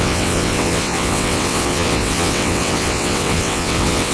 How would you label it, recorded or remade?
remade